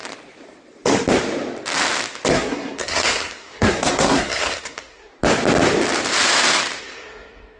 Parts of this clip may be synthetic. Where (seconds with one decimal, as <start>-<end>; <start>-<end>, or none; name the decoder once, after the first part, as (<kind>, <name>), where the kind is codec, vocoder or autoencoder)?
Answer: 2.3-5.1 (codec, SNAC); 6.8-7.6